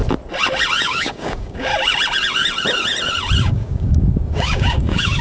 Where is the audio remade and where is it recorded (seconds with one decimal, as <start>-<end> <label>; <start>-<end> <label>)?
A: 0.0-0.8 recorded; 0.8-1.7 remade; 1.7-3.4 recorded; 3.4-5.2 remade